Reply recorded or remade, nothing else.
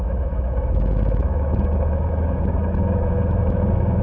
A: remade